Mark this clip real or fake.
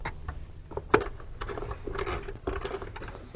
real